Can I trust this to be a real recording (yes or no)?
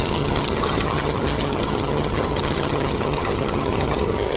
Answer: no